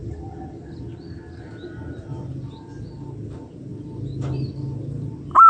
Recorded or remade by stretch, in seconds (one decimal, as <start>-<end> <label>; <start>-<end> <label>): 0.0-5.5 recorded